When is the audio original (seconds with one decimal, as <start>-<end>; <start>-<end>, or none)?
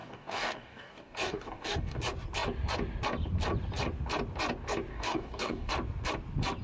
2.0-4.9; 5.7-6.6